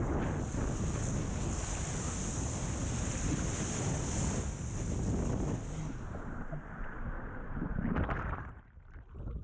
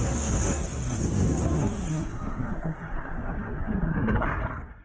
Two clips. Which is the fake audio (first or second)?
second